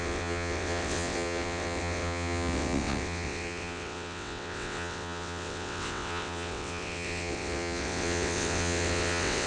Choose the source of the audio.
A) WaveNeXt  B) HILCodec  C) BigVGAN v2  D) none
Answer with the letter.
A